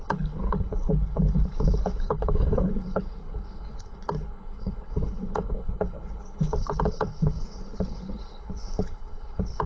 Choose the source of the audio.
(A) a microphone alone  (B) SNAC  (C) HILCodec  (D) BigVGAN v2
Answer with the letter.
C